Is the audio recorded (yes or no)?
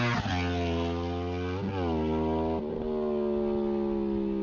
yes